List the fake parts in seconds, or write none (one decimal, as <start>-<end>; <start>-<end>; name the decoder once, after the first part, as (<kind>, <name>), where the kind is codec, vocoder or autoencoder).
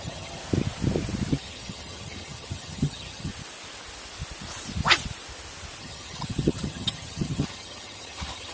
0.0-0.4 (vocoder, HiFi-GAN); 1.3-3.3; 5.8-8.5